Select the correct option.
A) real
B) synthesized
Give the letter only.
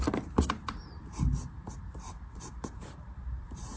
B